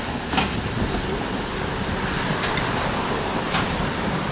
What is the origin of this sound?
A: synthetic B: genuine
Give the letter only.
B